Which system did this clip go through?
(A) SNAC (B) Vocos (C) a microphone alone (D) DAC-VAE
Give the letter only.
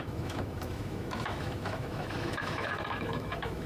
D